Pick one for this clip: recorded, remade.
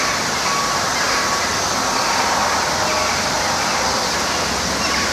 recorded